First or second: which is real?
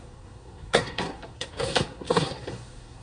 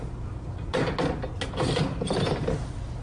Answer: second